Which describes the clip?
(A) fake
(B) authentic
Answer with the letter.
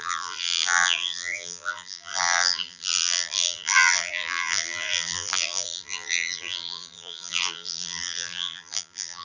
A